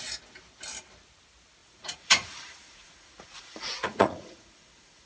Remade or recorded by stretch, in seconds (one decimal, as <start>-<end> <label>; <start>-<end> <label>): 0.0-1.6 recorded; 1.6-5.1 remade